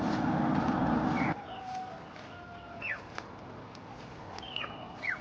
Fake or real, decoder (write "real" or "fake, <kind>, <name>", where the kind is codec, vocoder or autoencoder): real